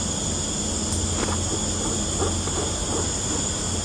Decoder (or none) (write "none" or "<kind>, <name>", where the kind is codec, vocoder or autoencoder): none